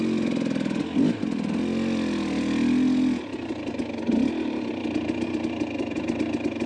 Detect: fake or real real